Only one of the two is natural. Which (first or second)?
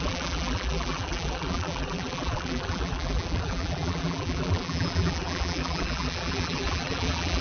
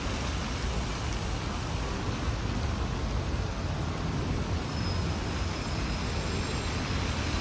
second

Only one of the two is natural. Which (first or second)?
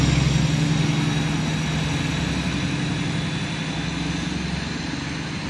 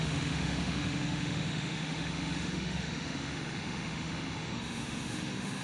first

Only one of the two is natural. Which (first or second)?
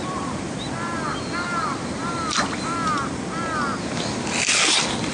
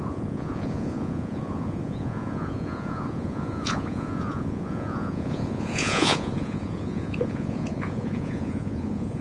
first